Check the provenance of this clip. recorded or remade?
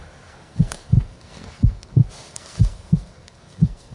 remade